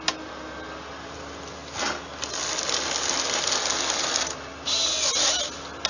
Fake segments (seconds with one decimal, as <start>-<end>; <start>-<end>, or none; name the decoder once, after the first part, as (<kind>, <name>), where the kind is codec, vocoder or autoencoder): none